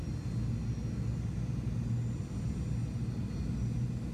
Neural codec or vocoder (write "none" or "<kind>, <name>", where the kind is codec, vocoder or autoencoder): none